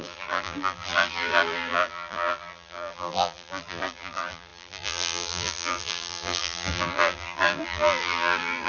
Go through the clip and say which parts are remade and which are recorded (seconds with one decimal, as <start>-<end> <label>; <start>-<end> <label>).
0.0-8.7 remade